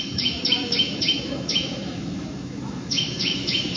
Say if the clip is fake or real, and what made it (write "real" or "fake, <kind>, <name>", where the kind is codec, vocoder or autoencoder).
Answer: fake, autoencoder, DAC-VAE